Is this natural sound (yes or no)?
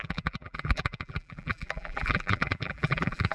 no